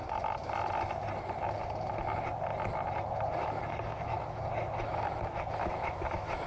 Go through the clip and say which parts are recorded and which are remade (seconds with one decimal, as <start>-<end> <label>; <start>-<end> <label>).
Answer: 0.0-3.9 recorded; 3.9-6.5 remade